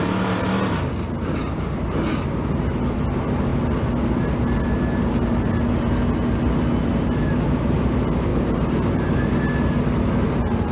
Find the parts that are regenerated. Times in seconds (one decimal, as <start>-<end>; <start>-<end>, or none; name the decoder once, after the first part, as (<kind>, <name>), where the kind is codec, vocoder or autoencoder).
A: none